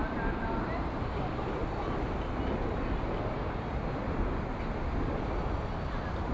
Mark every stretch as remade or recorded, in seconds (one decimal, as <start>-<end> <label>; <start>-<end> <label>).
0.0-6.3 recorded

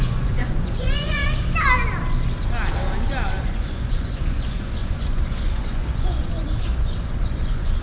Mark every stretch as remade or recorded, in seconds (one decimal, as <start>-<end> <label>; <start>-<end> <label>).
0.0-1.2 remade; 1.2-3.4 recorded; 3.4-7.8 remade

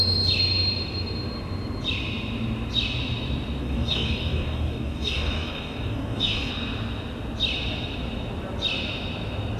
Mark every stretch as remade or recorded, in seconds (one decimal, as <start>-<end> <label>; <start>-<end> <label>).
0.0-3.6 recorded; 3.6-6.5 remade; 6.5-9.6 recorded

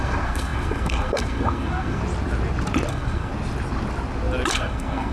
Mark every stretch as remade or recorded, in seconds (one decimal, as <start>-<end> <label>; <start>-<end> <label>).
0.0-2.0 remade; 2.0-2.9 recorded; 2.9-3.3 remade; 3.3-4.5 recorded; 4.5-5.1 remade

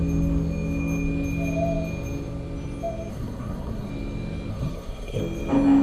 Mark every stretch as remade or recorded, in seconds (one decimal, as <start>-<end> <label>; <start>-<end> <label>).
0.0-3.1 recorded; 3.1-3.9 remade; 3.9-4.5 recorded; 4.5-5.2 remade; 5.2-5.8 recorded

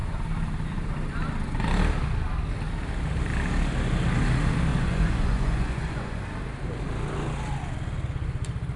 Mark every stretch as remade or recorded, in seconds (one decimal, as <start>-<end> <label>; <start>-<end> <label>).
0.0-4.7 recorded; 4.7-6.2 remade; 6.2-8.8 recorded

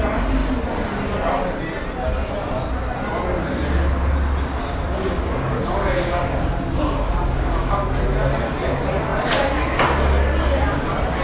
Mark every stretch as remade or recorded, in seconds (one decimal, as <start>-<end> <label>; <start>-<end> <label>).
0.0-4.6 recorded; 4.6-7.8 remade; 7.8-11.2 recorded